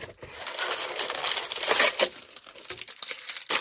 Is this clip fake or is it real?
real